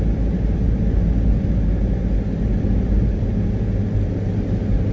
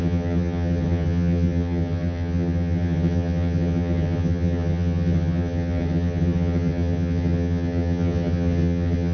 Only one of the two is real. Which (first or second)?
first